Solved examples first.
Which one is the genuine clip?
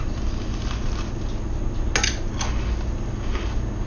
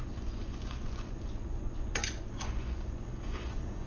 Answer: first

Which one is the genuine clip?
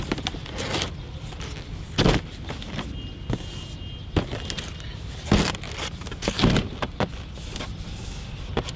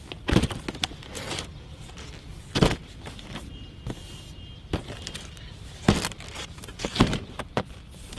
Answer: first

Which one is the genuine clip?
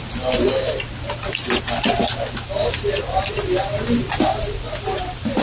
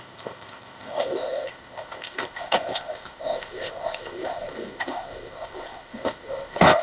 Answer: first